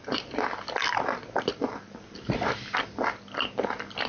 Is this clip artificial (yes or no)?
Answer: no